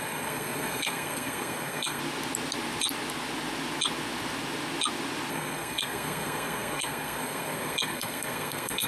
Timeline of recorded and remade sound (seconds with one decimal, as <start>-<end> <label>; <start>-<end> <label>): 0.0-2.0 remade; 2.0-5.3 recorded; 5.3-8.9 remade